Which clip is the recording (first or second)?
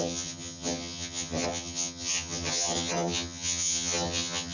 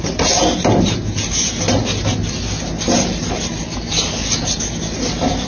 second